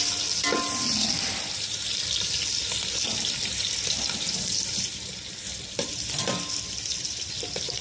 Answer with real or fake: real